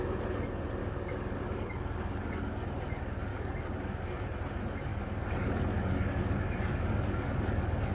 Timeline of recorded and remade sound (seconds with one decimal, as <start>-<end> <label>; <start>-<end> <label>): 0.0-0.8 recorded; 0.8-2.4 remade; 2.4-3.3 recorded; 3.3-4.2 remade; 4.2-4.9 recorded; 4.9-7.9 remade